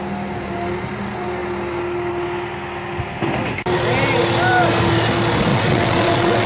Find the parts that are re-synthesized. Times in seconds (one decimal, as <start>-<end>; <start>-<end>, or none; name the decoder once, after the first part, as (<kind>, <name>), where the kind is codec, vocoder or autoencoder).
5.5-6.5 (vocoder, WaveNeXt)